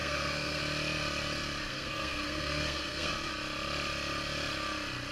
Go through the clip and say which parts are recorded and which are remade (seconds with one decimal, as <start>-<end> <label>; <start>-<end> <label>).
0.0-0.6 remade; 0.6-1.7 recorded; 1.7-3.1 remade; 3.1-5.1 recorded